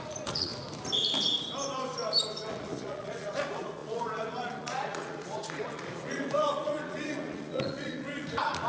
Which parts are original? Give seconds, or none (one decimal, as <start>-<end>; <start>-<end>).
0.5-2.5